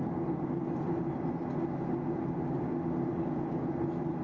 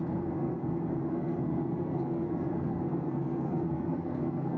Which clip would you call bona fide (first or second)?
first